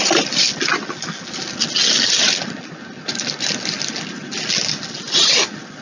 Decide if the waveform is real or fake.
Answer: real